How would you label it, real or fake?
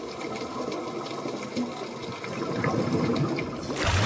real